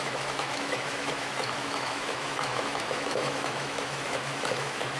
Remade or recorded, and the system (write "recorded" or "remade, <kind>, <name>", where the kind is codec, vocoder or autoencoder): remade, autoencoder, DAC-VAE